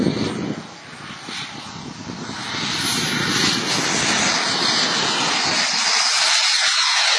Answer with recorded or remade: recorded